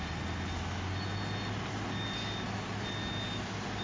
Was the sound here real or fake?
real